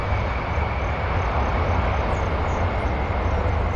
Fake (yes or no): no